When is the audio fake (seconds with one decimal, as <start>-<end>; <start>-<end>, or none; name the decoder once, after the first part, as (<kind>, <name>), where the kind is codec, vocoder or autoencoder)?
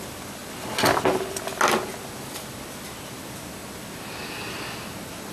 none